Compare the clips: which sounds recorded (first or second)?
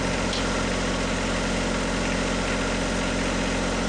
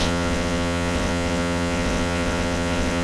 first